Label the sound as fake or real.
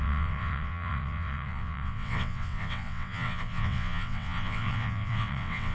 fake